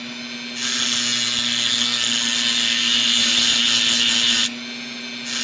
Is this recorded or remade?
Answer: recorded